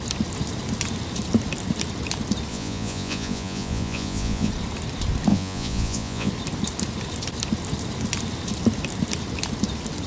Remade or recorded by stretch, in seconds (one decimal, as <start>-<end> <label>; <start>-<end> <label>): 0.0-2.5 recorded; 2.5-4.5 remade; 4.5-5.3 recorded; 5.3-6.3 remade; 6.3-10.1 recorded